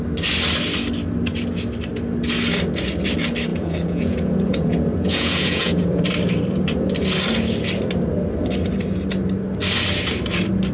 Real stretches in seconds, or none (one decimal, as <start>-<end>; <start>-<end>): 0.0-3.5; 6.0-10.7